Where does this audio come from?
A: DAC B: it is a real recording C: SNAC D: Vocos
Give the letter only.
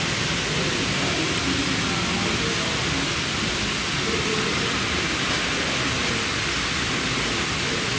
B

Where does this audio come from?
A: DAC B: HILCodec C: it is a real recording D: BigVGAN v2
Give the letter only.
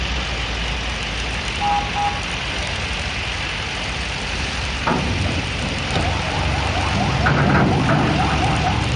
C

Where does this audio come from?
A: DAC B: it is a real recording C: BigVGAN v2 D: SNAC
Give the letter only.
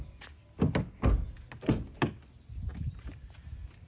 B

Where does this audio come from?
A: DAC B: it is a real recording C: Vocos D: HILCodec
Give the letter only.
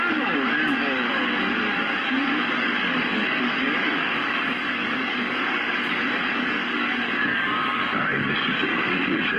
A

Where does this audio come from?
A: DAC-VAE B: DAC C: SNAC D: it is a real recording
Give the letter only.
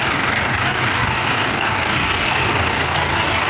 B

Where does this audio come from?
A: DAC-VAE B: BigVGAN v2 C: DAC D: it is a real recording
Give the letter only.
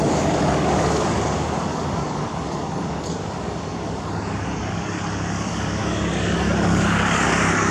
C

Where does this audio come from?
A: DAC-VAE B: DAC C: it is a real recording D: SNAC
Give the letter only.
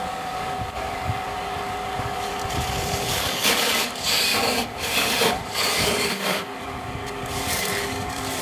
B